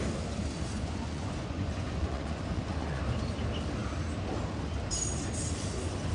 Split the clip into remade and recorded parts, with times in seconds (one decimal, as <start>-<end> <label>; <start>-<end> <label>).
0.0-0.7 recorded; 0.7-3.0 remade; 3.0-6.1 recorded